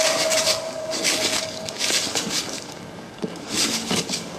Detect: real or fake fake